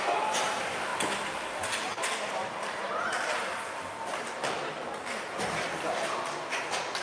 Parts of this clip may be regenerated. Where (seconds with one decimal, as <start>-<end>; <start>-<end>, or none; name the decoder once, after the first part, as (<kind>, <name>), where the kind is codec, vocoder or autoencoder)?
0.0-0.9 (vocoder, BigVGAN v2); 2.3-2.9